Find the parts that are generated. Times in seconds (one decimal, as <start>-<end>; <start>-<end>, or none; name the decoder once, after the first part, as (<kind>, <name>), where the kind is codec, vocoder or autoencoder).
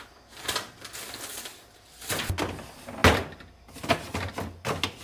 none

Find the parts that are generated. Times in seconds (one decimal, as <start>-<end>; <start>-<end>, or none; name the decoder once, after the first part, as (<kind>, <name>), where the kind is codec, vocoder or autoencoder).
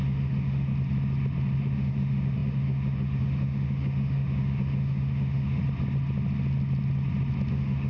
0.0-0.7 (autoencoder, DAC-VAE); 1.6-5.6; 7.5-7.9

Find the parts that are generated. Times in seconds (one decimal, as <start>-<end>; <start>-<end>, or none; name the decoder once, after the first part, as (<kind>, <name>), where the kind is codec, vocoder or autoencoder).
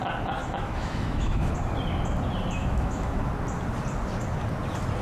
0.4-1.5 (autoencoder, DAC-VAE); 2.6-3.3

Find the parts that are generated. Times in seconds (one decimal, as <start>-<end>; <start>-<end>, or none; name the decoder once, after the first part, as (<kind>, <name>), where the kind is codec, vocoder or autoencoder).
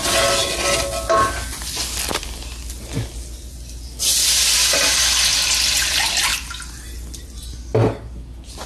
none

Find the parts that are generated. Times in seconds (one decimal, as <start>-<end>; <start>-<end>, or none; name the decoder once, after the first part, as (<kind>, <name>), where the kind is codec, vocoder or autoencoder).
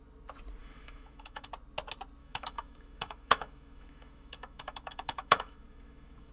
0.6-1.5 (autoencoder, DAC-VAE); 2.2-6.3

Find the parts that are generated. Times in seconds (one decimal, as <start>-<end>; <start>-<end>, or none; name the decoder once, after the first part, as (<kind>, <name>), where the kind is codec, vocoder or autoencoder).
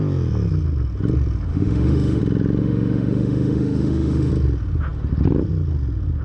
1.5-2.2 (autoencoder, DAC-VAE); 2.6-4.3